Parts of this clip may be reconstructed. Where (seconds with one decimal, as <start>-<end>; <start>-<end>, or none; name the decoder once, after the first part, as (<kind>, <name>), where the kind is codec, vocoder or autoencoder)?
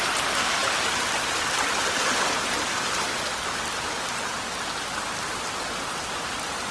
none